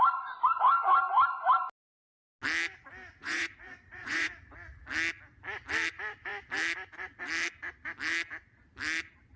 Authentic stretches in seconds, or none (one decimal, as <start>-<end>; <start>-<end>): 0.0-3.2; 4.3-9.4